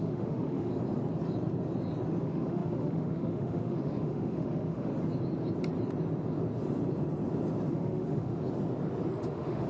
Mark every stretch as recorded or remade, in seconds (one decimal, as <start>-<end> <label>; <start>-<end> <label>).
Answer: 0.0-0.7 remade; 0.7-2.2 recorded; 2.2-4.9 remade; 4.9-7.7 recorded; 7.7-8.4 remade; 8.4-9.2 recorded; 9.2-9.7 remade